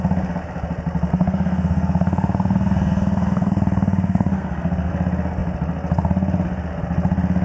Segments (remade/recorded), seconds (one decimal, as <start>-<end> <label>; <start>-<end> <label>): 0.0-1.1 recorded; 1.1-4.9 remade; 4.9-7.4 recorded